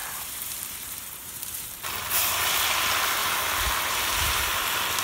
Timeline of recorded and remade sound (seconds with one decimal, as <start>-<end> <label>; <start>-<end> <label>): 0.0-1.8 remade; 1.8-5.0 recorded